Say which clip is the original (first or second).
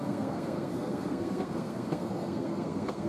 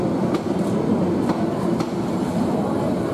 second